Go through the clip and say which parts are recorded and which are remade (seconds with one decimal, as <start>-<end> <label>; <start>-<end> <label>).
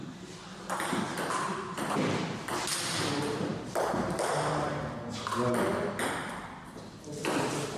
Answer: 0.0-7.8 recorded